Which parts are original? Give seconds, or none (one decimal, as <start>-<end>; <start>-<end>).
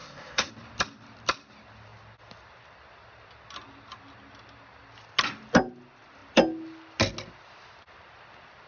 0.5-8.7